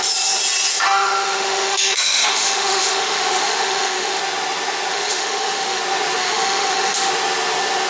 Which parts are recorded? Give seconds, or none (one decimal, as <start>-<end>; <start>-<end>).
0.0-0.7; 4.2-4.9; 5.8-6.2; 7.1-7.9